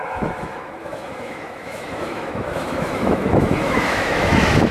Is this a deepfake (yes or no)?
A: yes